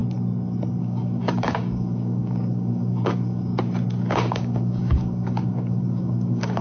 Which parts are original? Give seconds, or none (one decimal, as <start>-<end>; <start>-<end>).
0.0-0.8; 3.5-4.0